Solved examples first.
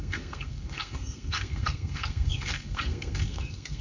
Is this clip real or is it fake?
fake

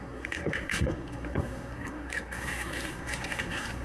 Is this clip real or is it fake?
fake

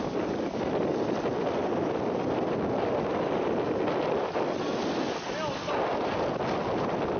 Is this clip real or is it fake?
real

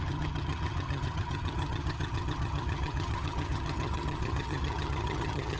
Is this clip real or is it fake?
fake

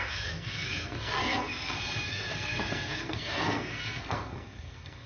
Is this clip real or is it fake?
fake